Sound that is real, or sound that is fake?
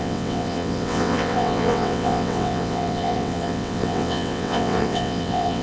fake